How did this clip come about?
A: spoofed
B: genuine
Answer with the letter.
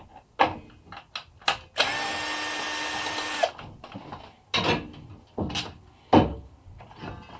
B